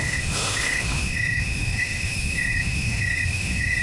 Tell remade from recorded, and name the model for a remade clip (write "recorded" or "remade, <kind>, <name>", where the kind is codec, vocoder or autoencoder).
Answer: remade, autoencoder, DAC-VAE